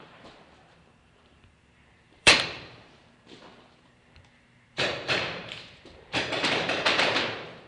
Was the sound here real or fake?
fake